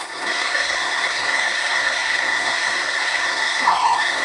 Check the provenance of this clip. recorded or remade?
remade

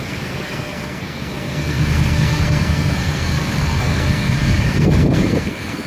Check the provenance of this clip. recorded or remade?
remade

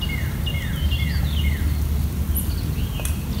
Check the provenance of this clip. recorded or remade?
recorded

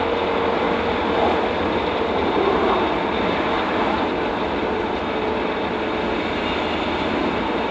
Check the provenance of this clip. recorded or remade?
recorded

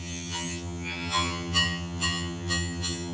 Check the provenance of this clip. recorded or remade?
remade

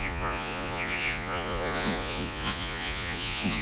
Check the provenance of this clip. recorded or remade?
remade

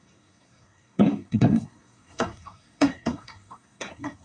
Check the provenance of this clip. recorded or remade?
remade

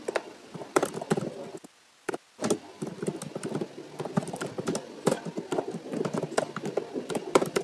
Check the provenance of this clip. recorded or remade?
recorded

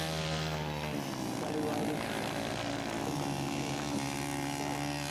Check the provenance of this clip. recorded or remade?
recorded